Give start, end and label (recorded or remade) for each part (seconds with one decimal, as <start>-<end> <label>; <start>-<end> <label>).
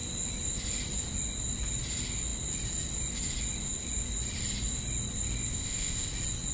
0.0-5.5 recorded; 5.5-6.1 remade; 6.1-6.5 recorded